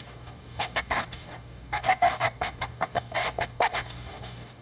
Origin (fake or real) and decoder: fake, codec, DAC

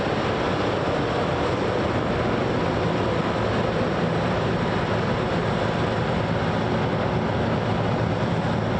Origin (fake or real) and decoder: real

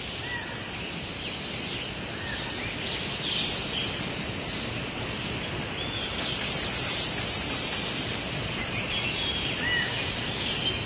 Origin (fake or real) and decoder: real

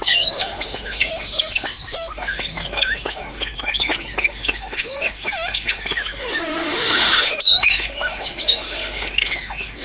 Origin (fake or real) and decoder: fake, autoencoder, DAC-VAE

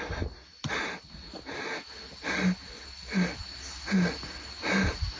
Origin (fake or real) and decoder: real